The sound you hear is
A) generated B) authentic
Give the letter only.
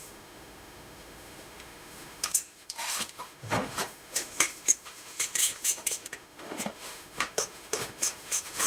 A